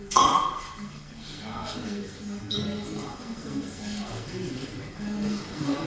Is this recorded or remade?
remade